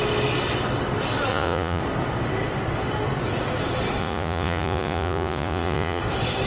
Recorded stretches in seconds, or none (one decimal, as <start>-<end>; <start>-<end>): 0.0-1.3; 1.8-4.0; 6.0-6.5